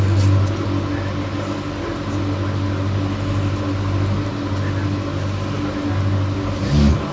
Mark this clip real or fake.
real